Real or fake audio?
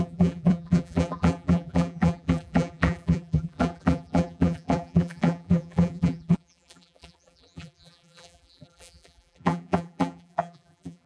fake